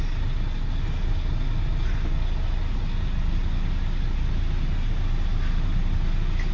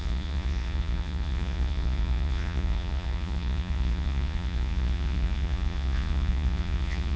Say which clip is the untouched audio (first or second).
first